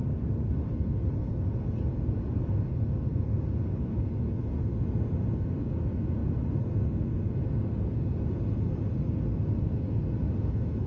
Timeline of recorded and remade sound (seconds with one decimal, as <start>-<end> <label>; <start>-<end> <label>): 0.0-10.9 recorded